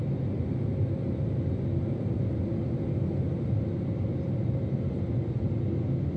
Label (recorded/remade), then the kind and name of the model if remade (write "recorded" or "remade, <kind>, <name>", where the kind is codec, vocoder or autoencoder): recorded